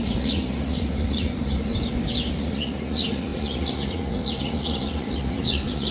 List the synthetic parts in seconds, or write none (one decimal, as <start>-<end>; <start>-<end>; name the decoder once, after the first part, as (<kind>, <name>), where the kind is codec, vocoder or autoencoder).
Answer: 0.0-1.7 (vocoder, Vocos); 2.3-5.9